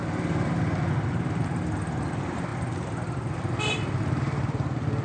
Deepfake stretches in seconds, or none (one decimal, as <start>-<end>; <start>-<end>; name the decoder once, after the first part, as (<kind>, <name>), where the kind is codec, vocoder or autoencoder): 0.0-2.5 (vocoder, BigVGAN v2); 3.3-5.0